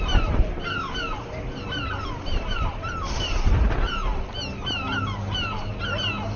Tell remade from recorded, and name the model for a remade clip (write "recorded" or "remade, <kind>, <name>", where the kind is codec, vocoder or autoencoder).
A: recorded